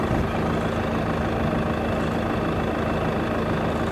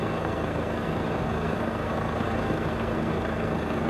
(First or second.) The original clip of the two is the first